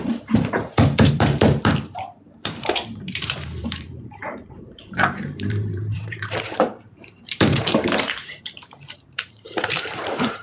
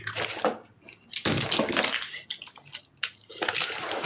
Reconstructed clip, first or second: first